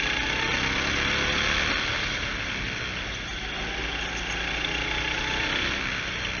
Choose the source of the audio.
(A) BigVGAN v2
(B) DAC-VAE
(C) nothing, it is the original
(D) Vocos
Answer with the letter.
C